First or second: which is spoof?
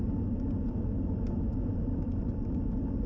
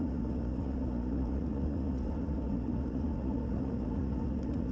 second